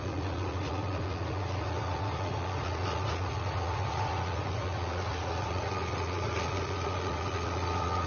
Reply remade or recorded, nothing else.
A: remade